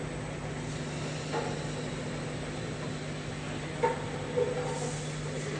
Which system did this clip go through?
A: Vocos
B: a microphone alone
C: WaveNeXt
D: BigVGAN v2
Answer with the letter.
B